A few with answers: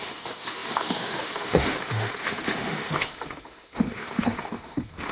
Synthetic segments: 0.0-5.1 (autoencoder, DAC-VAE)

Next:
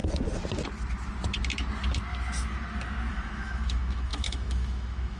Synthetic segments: 3.1-5.2 (autoencoder, DAC-VAE)

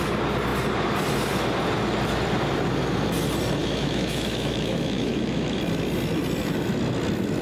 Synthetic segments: 3.6-5.6 (autoencoder, DAC-VAE)

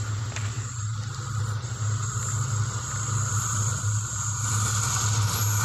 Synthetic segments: none